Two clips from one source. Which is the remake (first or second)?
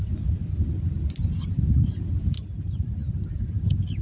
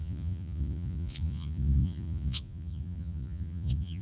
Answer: second